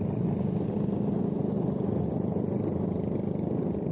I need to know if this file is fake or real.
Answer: real